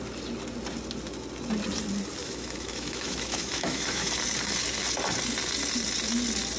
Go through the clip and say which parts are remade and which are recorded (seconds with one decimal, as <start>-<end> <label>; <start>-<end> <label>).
0.0-2.2 recorded; 2.2-4.1 remade; 4.1-6.6 recorded